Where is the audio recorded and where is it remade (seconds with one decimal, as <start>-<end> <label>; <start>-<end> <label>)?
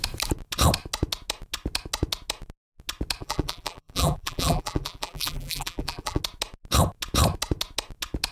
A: 0.0-3.2 recorded; 3.2-6.2 remade; 6.2-8.3 recorded